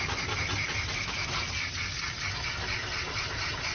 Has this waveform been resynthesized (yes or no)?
no